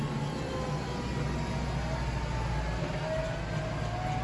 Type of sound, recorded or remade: recorded